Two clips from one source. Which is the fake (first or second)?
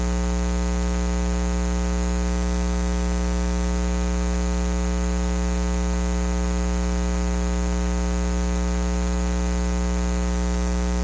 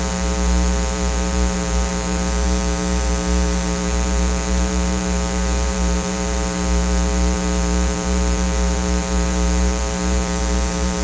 second